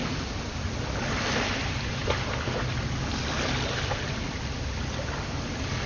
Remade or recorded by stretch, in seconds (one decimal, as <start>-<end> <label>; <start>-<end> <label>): 0.0-5.9 recorded